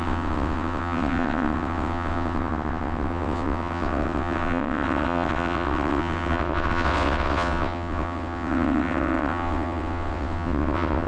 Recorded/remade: remade